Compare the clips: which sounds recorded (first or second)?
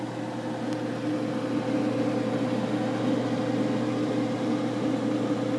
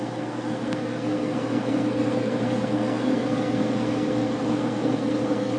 first